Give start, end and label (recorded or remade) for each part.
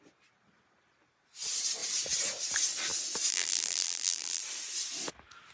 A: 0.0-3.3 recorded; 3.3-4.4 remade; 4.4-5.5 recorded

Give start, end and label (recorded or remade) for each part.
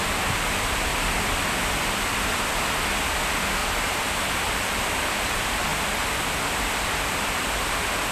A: 0.0-0.9 recorded; 0.9-2.6 remade; 2.6-3.6 recorded; 3.6-4.2 remade; 4.2-8.1 recorded